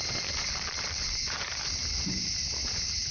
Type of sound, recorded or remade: remade